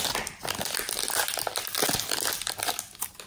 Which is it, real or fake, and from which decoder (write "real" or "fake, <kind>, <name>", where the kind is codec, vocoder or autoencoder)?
real